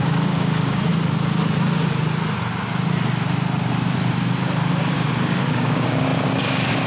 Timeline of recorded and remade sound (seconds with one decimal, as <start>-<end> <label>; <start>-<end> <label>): 0.0-0.9 remade; 0.9-4.9 recorded; 4.9-6.9 remade